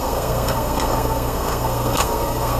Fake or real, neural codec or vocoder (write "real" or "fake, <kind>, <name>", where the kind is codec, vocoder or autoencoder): fake, codec, SNAC